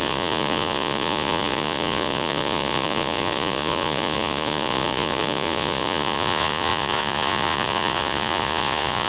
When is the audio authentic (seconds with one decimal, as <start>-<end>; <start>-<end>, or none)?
none